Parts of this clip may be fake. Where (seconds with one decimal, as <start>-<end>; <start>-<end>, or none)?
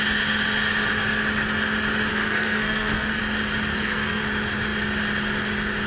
2.1-3.2; 3.7-4.2